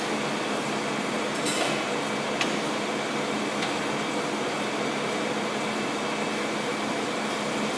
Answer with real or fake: real